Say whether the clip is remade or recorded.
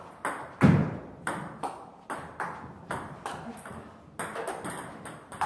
recorded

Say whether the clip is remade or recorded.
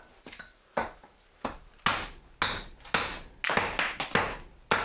recorded